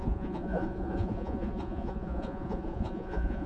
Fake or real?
fake